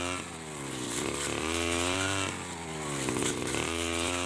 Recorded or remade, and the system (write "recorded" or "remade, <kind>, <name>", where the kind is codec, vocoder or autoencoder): recorded